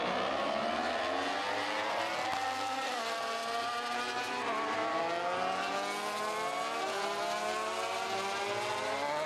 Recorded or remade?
recorded